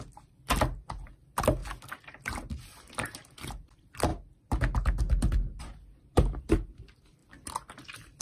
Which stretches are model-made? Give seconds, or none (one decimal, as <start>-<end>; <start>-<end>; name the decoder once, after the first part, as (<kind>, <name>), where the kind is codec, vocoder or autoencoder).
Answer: 0.0-1.6 (vocoder, BigVGAN v2); 2.7-4.1; 5.6-8.2